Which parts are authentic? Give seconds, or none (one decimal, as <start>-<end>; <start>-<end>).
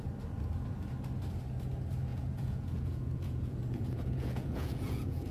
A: 0.0-2.1